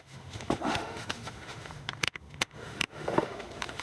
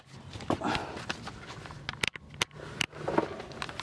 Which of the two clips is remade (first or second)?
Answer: first